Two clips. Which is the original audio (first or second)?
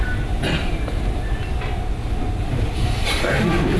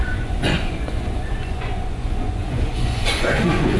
first